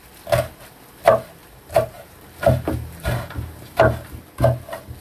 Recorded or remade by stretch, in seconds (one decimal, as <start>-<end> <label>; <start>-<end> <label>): 0.0-1.4 recorded; 1.4-4.2 remade; 4.2-5.0 recorded